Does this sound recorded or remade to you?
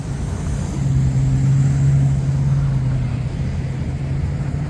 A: recorded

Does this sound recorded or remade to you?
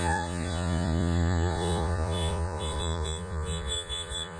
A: remade